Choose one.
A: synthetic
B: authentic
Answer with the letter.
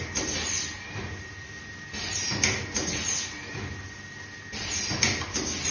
B